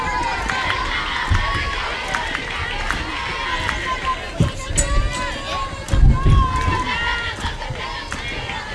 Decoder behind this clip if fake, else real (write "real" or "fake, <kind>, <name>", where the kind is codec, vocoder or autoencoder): real